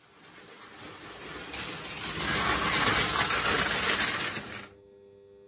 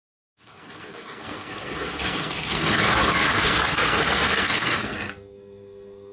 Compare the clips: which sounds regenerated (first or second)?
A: second